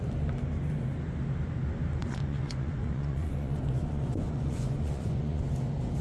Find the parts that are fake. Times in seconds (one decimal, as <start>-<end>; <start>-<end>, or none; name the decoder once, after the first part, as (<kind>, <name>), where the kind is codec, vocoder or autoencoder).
2.0-5.4 (vocoder, Vocos)